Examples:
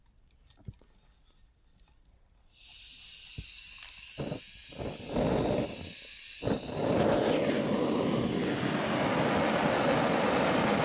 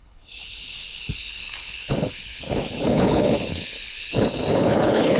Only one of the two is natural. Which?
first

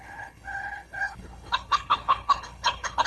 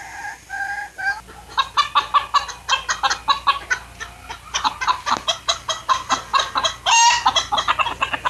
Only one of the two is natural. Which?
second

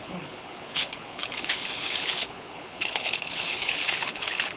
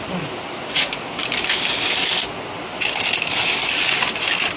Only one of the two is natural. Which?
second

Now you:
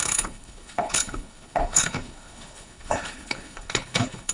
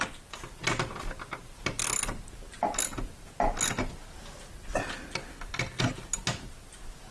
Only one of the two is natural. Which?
second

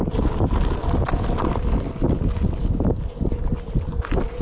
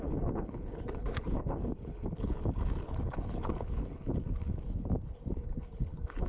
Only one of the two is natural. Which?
first